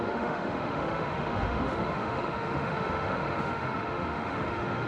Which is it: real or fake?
fake